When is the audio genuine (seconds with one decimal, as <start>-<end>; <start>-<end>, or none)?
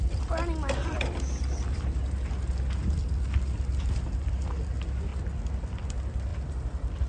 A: 0.0-0.8; 2.0-6.3